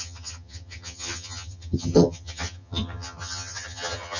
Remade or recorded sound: remade